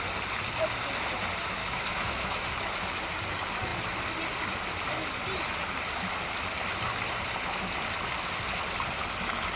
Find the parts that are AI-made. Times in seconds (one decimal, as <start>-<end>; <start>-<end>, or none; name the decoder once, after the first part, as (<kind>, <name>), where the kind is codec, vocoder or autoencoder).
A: 1.6-2.5 (autoencoder, DAC-VAE)